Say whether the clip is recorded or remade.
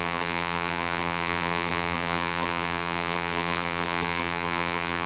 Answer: remade